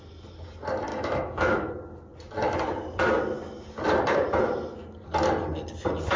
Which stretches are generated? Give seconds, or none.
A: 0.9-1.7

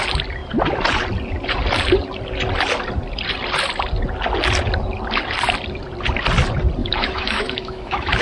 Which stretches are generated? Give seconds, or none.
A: 6.8-8.2

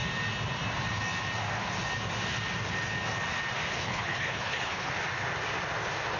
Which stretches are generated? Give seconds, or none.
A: 3.8-4.9

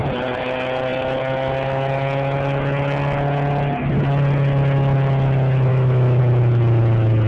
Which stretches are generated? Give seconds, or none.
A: 5.7-6.2

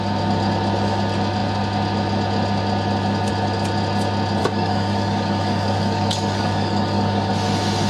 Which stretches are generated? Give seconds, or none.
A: 4.4-7.3